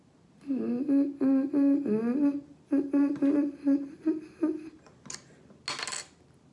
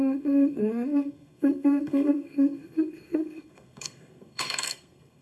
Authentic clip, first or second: first